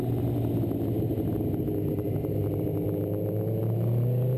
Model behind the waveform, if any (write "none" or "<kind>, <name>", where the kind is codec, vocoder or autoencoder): none